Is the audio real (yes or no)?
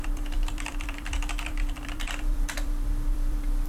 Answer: no